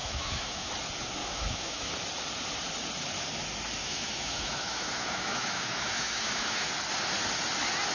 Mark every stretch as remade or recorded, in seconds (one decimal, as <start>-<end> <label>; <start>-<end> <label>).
0.0-0.7 remade; 0.7-1.2 recorded; 1.2-1.9 remade; 1.9-3.8 recorded; 3.8-6.7 remade; 6.7-7.9 recorded